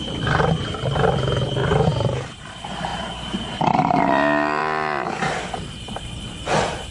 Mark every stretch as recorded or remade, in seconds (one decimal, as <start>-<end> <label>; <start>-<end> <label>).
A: 0.0-1.6 recorded; 1.6-2.5 remade; 2.5-2.9 recorded; 2.9-3.6 remade; 3.6-6.9 recorded